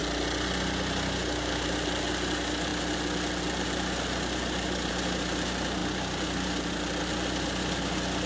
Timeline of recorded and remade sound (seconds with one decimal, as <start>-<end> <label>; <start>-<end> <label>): 0.0-8.3 recorded

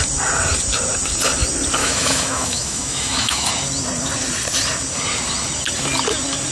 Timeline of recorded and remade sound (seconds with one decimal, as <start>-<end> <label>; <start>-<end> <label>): 0.0-1.8 recorded; 1.8-3.5 remade; 3.5-6.5 recorded